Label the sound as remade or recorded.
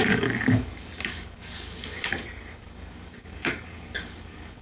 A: remade